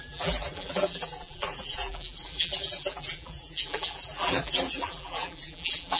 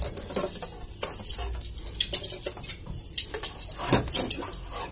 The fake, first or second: first